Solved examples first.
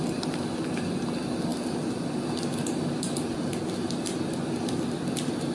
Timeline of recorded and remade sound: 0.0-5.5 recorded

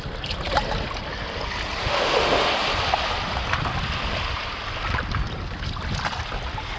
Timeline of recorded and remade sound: 0.0-1.8 recorded; 1.8-2.5 remade; 2.5-6.8 recorded

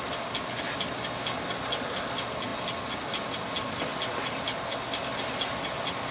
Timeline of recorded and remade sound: 0.0-6.1 recorded